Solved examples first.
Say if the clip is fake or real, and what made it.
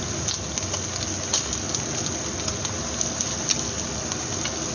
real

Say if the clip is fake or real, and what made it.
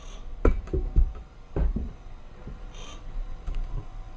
real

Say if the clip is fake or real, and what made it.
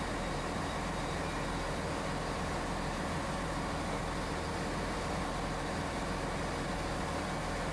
real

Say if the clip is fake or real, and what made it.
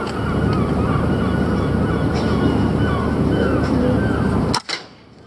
real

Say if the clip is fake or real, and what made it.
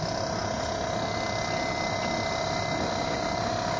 real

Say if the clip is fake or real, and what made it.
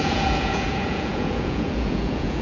fake, vocoder, Vocos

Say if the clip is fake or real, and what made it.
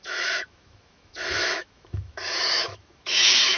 fake, autoencoder, DAC-VAE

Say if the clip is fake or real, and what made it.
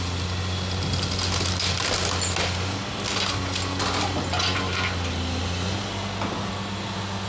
real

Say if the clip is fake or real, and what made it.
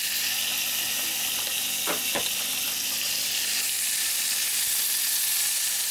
real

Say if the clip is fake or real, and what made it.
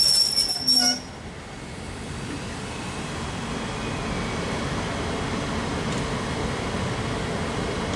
real